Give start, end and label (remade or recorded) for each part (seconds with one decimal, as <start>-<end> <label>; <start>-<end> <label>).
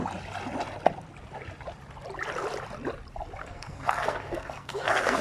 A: 0.0-3.4 recorded; 3.4-5.2 remade